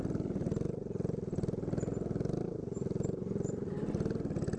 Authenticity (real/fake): real